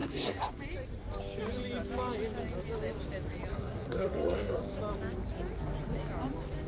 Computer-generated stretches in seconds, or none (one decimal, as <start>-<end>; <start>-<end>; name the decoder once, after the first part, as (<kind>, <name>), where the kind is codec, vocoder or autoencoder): 0.0-0.6 (codec, SNAC); 3.5-4.6